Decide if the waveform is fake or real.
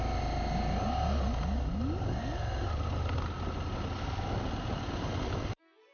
real